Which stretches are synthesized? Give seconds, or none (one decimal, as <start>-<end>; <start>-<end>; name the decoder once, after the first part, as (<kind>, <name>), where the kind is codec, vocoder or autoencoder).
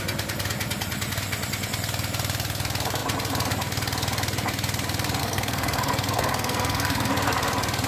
5.2-7.1 (codec, SNAC)